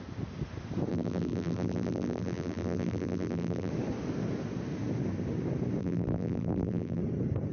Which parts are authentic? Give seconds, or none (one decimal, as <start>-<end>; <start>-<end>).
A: 0.0-0.9; 3.7-5.8; 7.0-7.5